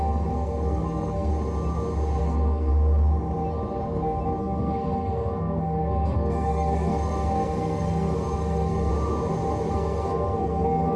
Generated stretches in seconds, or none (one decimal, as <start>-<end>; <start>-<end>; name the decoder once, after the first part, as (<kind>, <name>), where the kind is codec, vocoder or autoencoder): 0.0-1.3 (codec, SNAC); 2.2-2.7; 4.4-8.9; 9.7-11.0